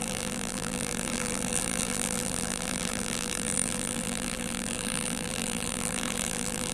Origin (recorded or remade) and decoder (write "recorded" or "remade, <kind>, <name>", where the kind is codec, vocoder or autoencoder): remade, vocoder, BigVGAN v2